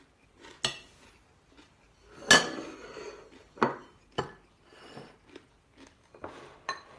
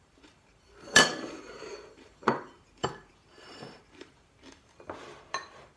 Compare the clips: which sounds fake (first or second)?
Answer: second